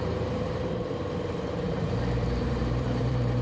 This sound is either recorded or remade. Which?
remade